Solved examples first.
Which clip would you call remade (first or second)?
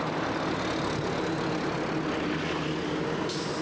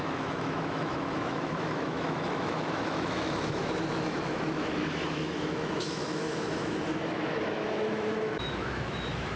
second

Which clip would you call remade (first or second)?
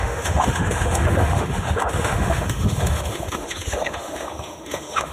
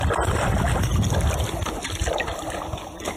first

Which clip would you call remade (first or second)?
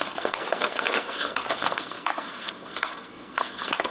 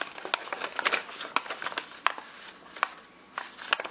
first